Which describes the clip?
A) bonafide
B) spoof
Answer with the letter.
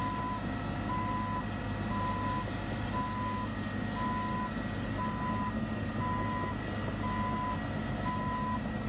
A